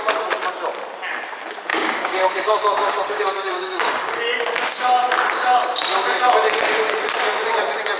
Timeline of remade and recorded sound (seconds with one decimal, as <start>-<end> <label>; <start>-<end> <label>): 0.0-1.7 recorded; 1.7-4.2 remade; 4.2-8.0 recorded